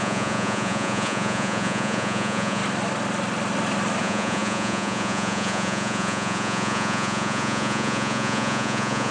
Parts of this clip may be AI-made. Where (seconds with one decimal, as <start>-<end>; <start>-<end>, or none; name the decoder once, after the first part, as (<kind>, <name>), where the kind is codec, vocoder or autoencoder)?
0.0-2.6 (vocoder, Vocos); 4.0-9.1